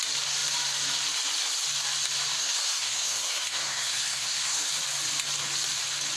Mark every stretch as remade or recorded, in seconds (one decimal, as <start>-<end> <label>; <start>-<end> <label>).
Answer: 0.0-2.4 recorded; 2.4-4.7 remade; 4.7-6.2 recorded